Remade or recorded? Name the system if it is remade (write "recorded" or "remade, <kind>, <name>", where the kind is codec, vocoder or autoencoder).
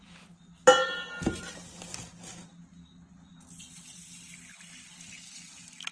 recorded